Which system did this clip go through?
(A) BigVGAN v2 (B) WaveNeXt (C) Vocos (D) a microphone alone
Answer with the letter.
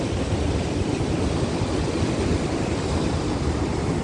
D